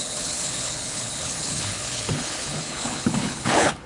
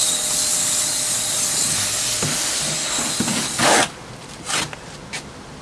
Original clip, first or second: second